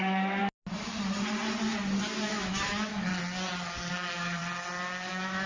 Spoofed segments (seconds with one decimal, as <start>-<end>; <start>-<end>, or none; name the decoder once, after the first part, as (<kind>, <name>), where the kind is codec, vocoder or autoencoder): 0.0-0.4 (autoencoder, DAC-VAE); 2.2-3.1; 3.9-4.4; 5.1-5.5